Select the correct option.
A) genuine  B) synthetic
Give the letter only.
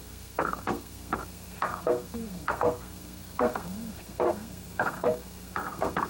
B